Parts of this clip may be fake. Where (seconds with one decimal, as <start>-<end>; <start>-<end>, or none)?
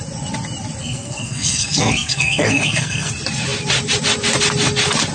0.8-3.1